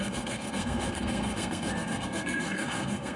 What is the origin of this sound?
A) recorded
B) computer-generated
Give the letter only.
B